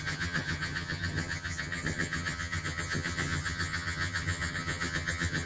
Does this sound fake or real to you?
fake